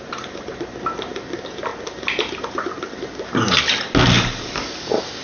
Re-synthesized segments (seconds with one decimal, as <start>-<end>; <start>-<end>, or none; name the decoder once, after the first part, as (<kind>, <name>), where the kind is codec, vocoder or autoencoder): none

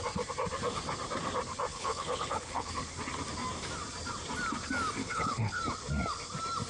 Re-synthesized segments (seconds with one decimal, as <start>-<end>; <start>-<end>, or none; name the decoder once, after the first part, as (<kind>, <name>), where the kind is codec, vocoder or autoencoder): 1.7-2.7 (codec, HILCodec); 5.0-5.6

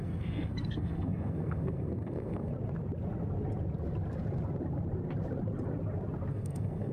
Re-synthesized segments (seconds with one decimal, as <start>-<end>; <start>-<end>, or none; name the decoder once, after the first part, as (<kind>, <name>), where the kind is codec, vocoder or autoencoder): 0.0-2.5 (codec, SNAC); 6.3-6.9

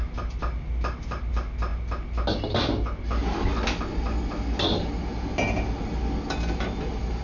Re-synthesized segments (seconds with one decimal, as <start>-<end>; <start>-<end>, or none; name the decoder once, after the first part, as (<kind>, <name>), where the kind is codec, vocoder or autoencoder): none

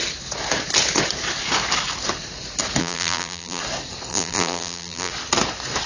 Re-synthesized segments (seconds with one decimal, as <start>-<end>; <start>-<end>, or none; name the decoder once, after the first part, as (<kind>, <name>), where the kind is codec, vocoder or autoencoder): 2.8-3.6 (vocoder, BigVGAN v2); 4.1-5.1